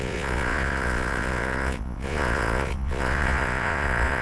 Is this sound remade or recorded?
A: remade